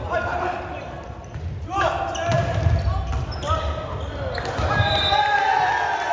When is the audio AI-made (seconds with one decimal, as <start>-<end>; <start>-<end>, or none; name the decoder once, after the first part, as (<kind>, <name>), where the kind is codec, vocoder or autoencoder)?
none